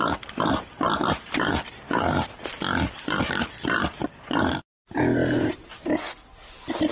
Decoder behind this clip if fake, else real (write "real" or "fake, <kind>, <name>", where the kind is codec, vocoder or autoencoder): real